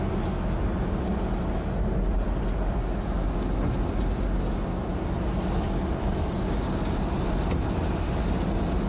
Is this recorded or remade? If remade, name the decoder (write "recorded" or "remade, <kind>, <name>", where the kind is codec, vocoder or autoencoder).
recorded